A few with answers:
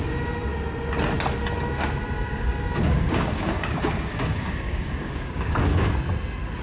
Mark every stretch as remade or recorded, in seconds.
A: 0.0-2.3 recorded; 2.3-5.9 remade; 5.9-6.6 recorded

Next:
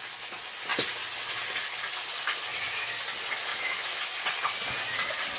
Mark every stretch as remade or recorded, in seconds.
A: 0.0-2.5 recorded; 2.5-3.0 remade; 3.0-3.5 recorded; 3.5-4.1 remade; 4.1-5.4 recorded

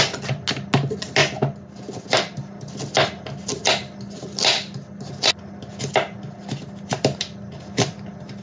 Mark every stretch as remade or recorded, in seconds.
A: 0.0-8.4 recorded

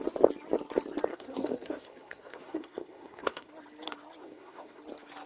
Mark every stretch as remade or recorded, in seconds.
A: 0.0-1.1 recorded; 1.1-3.5 remade; 3.5-4.2 recorded; 4.2-4.8 remade; 4.8-5.3 recorded

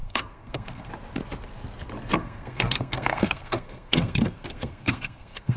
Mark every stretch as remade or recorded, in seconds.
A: 0.0-0.9 remade; 0.9-2.2 recorded; 2.2-5.6 remade